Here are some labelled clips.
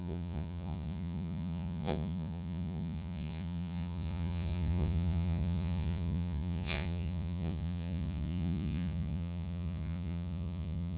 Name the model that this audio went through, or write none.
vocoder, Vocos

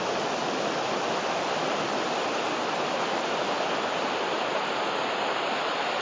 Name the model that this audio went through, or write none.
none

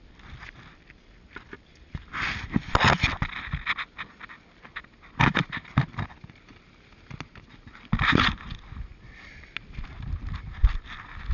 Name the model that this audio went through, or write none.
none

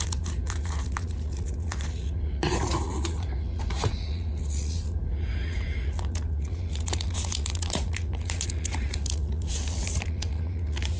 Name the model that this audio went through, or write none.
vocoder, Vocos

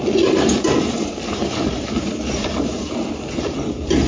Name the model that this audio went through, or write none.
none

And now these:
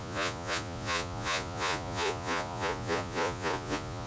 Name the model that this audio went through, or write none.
vocoder, Vocos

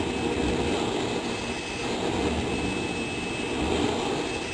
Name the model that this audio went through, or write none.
none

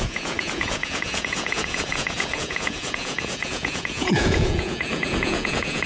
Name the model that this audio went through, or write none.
vocoder, Vocos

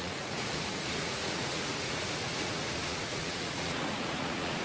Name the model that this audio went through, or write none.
vocoder, Vocos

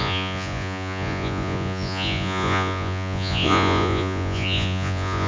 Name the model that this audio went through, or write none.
vocoder, Vocos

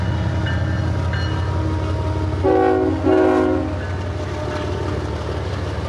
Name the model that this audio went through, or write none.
none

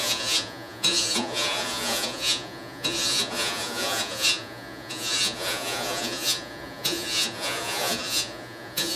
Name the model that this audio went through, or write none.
vocoder, Vocos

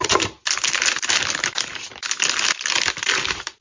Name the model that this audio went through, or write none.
none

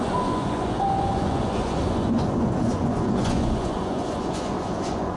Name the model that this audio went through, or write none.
vocoder, Vocos